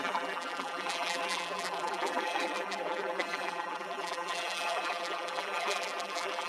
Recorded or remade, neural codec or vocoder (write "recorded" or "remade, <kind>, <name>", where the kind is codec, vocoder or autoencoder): remade, vocoder, BigVGAN v2